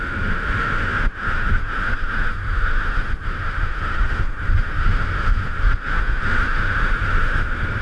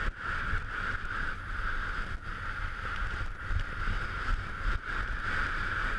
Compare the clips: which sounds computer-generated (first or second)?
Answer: first